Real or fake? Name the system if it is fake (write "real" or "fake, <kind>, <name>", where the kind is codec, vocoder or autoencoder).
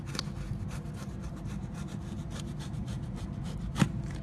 fake, vocoder, BigVGAN v2